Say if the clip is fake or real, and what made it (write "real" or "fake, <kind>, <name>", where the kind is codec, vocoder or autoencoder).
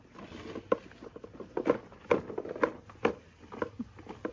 real